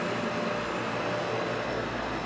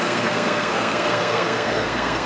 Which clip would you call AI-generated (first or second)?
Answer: second